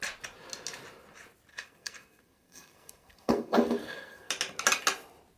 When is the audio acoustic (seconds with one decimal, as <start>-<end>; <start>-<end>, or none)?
0.0-1.5; 4.3-5.4